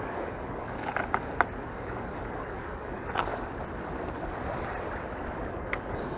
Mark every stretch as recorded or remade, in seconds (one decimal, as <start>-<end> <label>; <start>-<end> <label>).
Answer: 0.0-0.9 remade; 0.9-1.6 recorded; 1.6-3.3 remade; 3.3-5.5 recorded; 5.5-6.2 remade